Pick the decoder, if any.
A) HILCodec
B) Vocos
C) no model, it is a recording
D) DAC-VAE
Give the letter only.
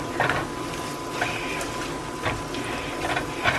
C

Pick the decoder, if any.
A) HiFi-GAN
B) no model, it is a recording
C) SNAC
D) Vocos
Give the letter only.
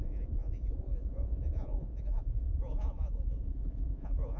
D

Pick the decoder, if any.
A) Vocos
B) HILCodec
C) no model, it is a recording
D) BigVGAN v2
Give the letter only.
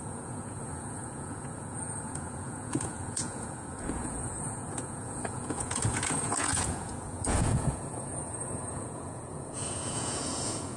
A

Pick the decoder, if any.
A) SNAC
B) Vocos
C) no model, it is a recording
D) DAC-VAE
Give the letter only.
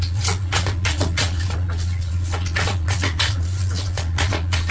B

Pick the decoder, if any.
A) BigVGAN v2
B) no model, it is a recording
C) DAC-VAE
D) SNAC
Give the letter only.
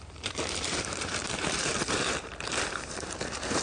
A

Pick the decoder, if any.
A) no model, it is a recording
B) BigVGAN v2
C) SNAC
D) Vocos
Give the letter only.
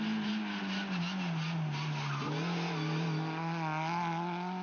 A